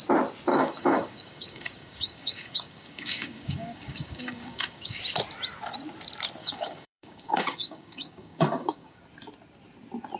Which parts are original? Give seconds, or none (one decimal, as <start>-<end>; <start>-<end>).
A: 0.0-0.5; 5.0-6.4; 9.0-10.2

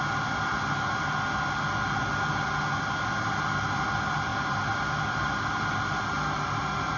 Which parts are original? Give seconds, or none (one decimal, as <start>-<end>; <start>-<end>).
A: 0.0-7.0

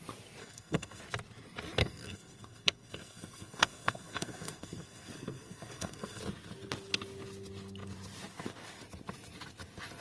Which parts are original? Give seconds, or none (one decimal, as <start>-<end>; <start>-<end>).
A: 0.0-0.4; 1.0-1.8; 6.2-10.0

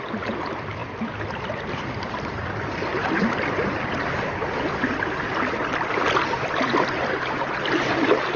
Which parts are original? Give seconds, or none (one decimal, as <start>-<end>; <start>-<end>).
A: 0.0-2.9; 6.0-6.7

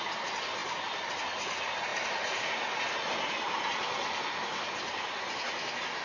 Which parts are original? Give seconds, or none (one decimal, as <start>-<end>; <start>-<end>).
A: 0.0-6.0

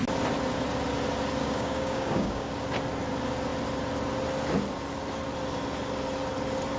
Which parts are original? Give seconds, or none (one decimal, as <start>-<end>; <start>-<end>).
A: 0.0-1.4; 2.5-6.8

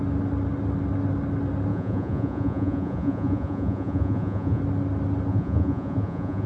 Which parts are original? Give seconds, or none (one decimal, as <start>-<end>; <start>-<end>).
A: 0.0-1.7; 4.6-5.3